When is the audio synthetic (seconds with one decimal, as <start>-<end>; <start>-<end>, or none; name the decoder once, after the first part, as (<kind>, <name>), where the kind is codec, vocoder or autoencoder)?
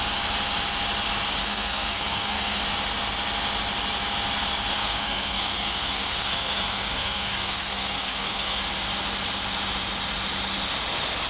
1.4-2.6 (codec, SNAC); 4.7-8.6